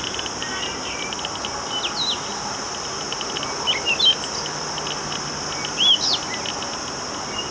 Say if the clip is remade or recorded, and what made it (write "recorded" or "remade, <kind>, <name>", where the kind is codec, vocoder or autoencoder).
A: recorded